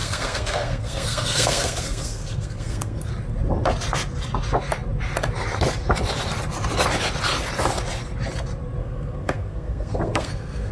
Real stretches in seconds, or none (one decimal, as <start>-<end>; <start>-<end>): 3.1-8.8